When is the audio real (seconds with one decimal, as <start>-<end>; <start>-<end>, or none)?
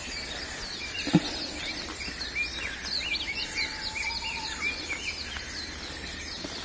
0.0-6.6